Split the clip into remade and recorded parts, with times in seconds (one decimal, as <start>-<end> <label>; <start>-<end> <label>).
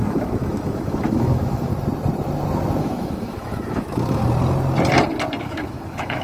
0.0-1.7 remade; 1.7-2.8 recorded; 2.8-4.2 remade; 4.2-5.4 recorded; 5.4-6.2 remade